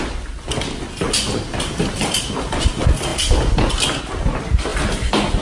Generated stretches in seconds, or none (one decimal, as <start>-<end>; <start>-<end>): none